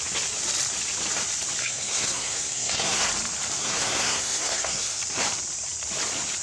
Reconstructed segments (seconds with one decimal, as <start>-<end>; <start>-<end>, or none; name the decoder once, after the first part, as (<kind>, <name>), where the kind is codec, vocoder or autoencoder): 1.6-3.0 (codec, SNAC); 3.6-5.0